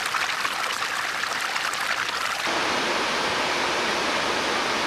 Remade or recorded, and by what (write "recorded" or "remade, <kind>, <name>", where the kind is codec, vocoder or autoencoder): recorded